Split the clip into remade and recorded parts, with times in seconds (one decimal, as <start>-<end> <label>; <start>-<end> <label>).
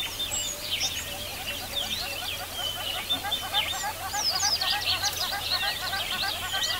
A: 0.0-6.8 recorded